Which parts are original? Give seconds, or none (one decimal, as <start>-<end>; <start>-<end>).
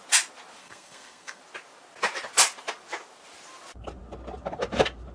0.0-0.6; 1.4-5.1